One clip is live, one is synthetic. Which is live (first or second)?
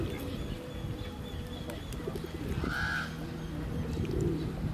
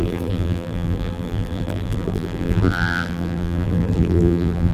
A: first